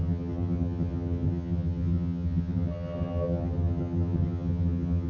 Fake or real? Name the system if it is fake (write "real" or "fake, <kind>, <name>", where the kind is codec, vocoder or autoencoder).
fake, vocoder, HiFi-GAN